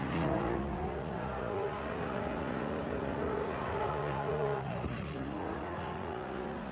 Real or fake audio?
fake